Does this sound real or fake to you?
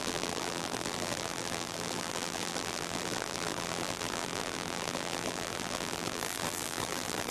fake